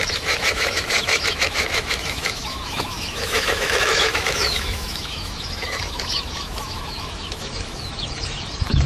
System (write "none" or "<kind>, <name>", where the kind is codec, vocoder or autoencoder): autoencoder, DAC-VAE